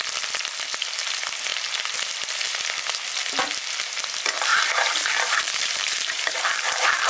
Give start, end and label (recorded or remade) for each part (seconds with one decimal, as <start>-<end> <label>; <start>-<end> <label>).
0.0-4.5 recorded; 4.5-7.1 remade